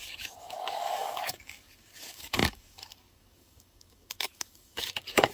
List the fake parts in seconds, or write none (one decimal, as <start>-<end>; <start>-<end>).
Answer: 0.0-5.3